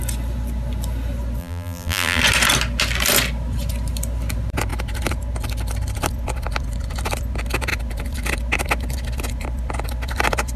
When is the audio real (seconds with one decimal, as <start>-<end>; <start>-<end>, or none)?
0.0-1.4; 2.2-10.6